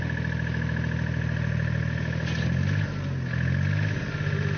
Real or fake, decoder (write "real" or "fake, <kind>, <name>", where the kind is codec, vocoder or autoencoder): real